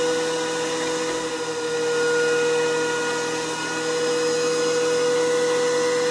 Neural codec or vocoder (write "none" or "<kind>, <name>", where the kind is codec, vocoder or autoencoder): none